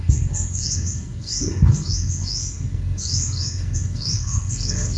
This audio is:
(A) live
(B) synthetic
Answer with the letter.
B